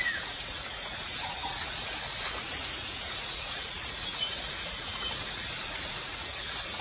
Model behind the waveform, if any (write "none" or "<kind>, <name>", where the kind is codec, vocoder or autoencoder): vocoder, Vocos